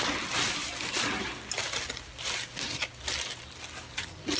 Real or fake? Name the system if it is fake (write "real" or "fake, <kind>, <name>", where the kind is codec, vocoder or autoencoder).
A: real